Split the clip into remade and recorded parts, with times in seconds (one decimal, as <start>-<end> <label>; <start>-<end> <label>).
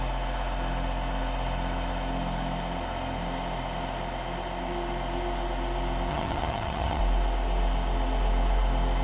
0.0-6.1 recorded; 6.1-7.0 remade; 7.0-9.0 recorded